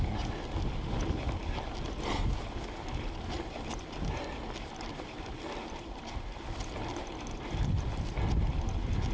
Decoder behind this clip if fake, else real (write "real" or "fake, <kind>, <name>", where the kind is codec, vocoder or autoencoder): real